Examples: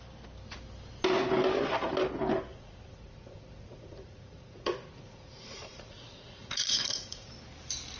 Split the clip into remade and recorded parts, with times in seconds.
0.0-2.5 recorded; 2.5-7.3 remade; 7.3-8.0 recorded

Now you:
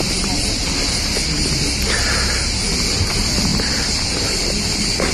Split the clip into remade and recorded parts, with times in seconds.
0.0-0.6 remade; 0.6-3.1 recorded; 3.1-5.1 remade

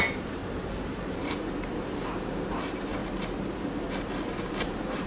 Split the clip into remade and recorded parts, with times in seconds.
0.0-0.4 remade; 0.4-1.2 recorded; 1.2-3.0 remade; 3.0-4.5 recorded; 4.5-5.1 remade

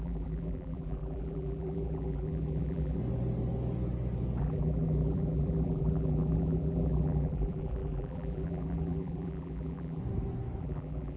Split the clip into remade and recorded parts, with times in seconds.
0.0-3.0 remade; 3.0-4.4 recorded; 4.4-10.0 remade; 10.0-10.6 recorded; 10.6-11.2 remade

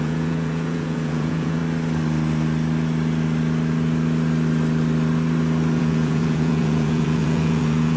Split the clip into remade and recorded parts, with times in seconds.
0.0-1.6 remade; 1.6-5.8 recorded; 5.8-8.0 remade